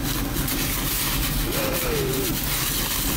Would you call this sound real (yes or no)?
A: yes